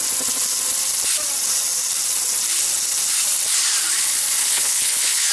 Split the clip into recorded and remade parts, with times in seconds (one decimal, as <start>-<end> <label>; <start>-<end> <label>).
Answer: 0.0-4.4 recorded; 4.4-5.3 remade